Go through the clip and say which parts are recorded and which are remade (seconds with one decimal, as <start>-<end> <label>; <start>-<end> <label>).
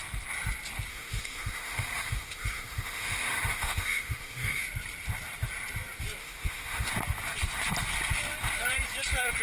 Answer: 0.0-0.9 recorded; 0.9-4.6 remade; 4.6-6.2 recorded; 6.2-6.9 remade; 6.9-9.4 recorded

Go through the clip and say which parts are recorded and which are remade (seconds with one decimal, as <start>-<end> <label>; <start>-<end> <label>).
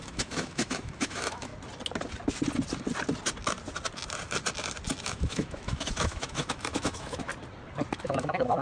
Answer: 0.0-1.5 remade; 1.5-5.0 recorded; 5.0-7.3 remade; 7.3-8.0 recorded; 8.0-8.6 remade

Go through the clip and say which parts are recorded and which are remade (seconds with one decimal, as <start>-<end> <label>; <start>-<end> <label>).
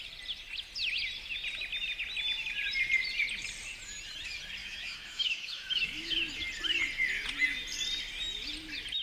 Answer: 0.0-4.6 recorded; 4.6-6.2 remade; 6.2-9.0 recorded